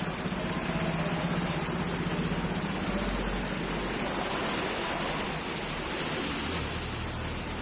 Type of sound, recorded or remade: recorded